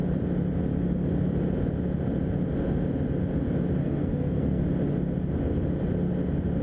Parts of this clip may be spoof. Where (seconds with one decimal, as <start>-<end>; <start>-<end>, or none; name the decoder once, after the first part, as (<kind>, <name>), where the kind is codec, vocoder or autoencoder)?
3.8-4.6 (codec, SNAC)